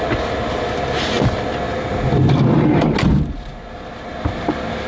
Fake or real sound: real